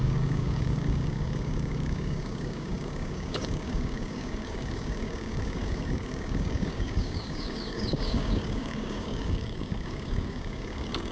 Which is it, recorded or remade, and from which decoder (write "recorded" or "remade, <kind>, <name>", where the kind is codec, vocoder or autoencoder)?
remade, codec, DAC